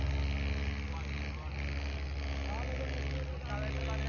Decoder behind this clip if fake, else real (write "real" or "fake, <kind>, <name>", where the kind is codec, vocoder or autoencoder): real